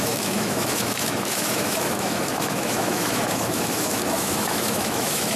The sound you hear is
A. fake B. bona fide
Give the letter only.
A